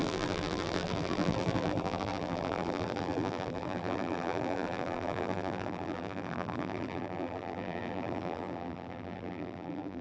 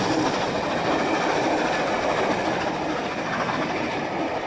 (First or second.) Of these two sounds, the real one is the second